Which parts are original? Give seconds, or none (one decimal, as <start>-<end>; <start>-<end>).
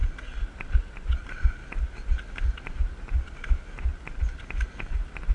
0.0-5.3